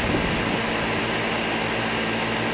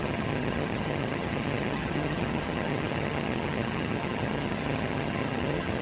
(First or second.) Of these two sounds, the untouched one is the first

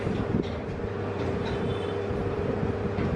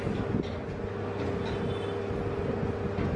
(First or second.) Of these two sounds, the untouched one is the second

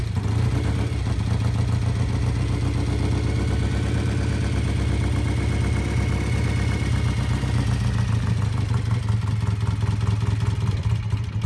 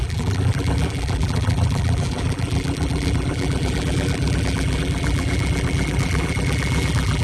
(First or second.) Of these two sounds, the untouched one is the first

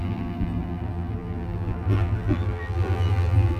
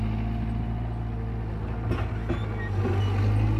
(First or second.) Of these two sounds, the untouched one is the second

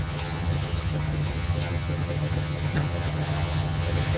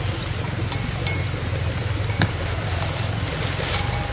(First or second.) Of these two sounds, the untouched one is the second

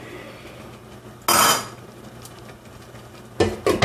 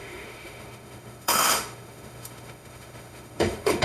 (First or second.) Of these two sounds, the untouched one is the first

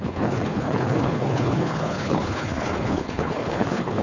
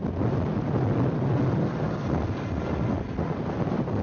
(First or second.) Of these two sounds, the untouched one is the second